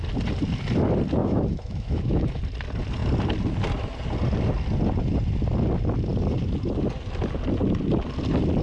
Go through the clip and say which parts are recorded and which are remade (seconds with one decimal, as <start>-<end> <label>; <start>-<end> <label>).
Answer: 0.0-1.2 recorded; 1.2-2.4 remade; 2.4-8.6 recorded